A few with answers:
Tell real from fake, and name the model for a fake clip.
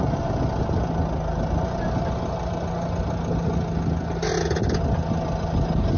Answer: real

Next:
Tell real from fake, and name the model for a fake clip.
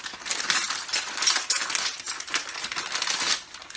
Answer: real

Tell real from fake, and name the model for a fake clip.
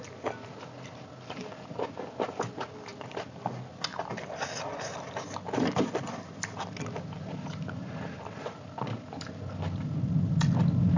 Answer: real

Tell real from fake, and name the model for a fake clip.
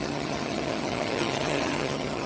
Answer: fake, vocoder, HiFi-GAN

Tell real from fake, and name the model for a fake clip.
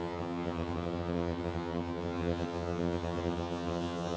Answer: fake, vocoder, HiFi-GAN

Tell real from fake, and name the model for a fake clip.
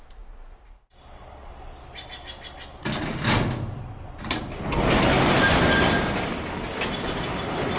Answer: real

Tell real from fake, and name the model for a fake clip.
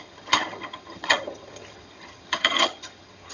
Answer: fake, vocoder, HiFi-GAN